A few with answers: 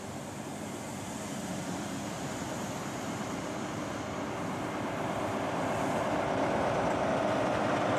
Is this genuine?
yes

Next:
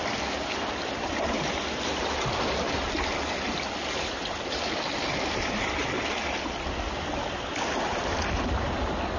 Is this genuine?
yes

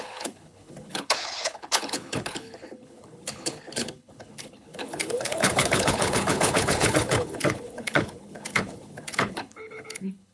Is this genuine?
no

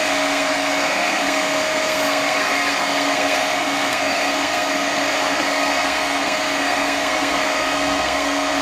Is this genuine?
no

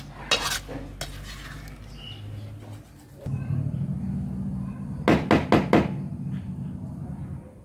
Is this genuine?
yes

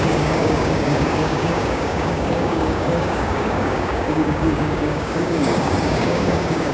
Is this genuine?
no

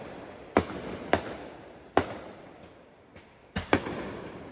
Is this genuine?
yes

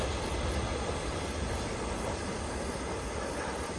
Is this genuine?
yes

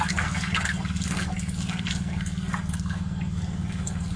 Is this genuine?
no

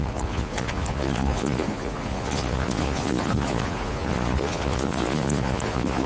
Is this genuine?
no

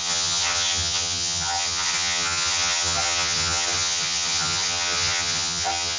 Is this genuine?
no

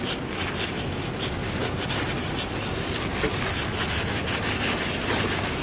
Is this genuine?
yes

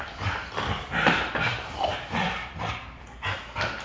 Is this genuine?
no